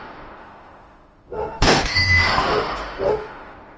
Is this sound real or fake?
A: fake